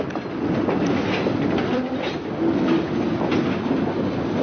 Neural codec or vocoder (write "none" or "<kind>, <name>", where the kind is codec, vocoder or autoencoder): none